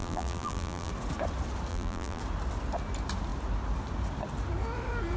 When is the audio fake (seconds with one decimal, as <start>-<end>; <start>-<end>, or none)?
0.0-0.9; 1.7-2.2